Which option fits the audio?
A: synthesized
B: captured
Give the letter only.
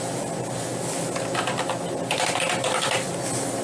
B